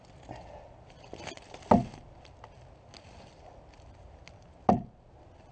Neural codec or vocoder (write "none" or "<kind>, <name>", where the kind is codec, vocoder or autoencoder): none